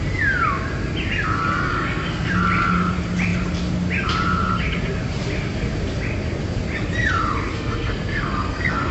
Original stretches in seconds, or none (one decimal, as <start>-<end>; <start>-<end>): 0.0-1.7; 2.3-7.5